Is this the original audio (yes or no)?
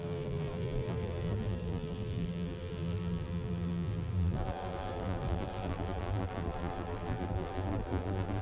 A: no